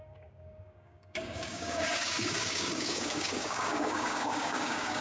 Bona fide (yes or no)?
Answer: no